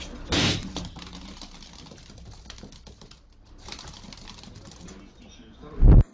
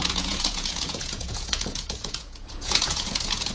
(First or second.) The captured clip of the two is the first